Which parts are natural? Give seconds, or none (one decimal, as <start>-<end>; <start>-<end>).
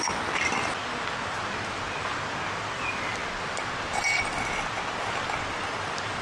0.0-6.2